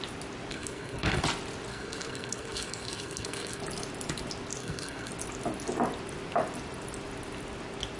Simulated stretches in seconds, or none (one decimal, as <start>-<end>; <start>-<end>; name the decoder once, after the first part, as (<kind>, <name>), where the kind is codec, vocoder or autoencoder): 0.5-1.2 (codec, SNAC); 1.7-3.6; 4.6-5.1